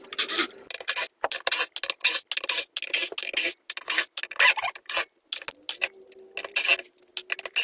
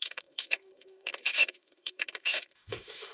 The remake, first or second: second